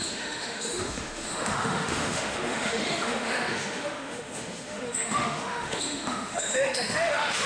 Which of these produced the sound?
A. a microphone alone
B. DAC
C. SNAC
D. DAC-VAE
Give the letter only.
D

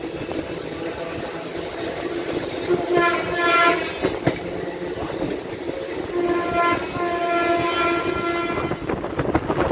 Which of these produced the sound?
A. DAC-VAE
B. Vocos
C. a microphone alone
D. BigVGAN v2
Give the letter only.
C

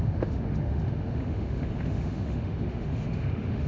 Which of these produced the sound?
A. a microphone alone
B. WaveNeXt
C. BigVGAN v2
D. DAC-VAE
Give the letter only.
D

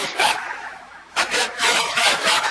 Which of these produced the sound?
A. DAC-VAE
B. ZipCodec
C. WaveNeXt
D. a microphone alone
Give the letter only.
A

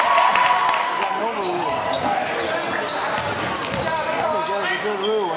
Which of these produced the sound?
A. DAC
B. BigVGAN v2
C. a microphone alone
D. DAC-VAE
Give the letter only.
C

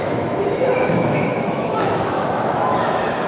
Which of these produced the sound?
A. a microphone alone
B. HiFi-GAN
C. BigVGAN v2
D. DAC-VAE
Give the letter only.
D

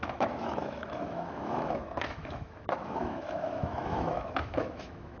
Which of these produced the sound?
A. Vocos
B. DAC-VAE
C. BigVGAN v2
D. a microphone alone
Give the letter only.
B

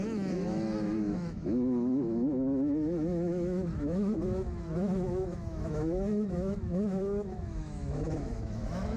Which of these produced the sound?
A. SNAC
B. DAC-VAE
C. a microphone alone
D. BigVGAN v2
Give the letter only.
B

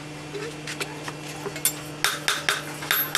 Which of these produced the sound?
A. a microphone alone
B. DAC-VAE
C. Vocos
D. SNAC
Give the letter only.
A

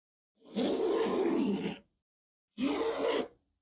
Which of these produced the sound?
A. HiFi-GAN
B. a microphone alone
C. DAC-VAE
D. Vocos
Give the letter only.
B